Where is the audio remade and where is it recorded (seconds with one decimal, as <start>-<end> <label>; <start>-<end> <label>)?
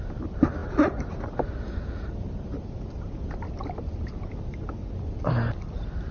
0.0-6.1 recorded